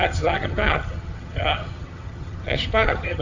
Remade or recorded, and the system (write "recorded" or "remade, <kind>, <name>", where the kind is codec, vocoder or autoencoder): remade, vocoder, HiFi-GAN